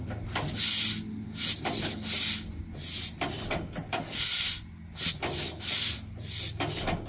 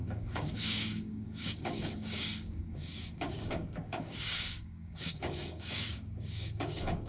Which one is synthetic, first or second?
second